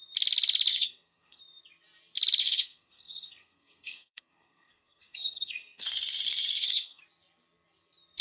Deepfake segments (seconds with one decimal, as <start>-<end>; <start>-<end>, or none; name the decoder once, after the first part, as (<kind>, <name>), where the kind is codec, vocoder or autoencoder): 0.7-1.4 (codec, SNAC); 2.4-7.0